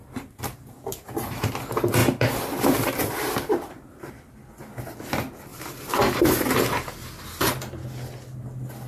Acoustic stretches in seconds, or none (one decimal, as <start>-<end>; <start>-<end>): 1.5-2.0; 4.1-5.5; 7.2-8.9